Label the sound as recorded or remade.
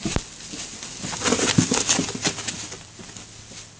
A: remade